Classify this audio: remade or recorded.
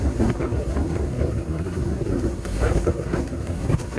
remade